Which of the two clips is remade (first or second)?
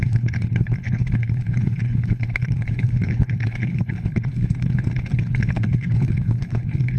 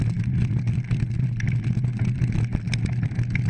first